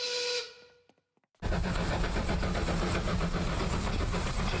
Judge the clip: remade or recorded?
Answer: recorded